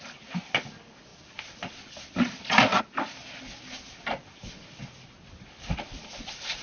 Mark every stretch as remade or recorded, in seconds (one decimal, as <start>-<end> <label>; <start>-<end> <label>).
0.0-6.6 recorded